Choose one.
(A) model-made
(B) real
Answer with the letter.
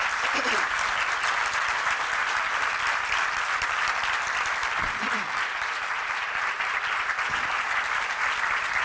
A